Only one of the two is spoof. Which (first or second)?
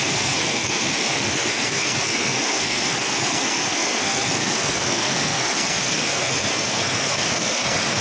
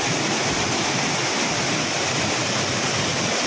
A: first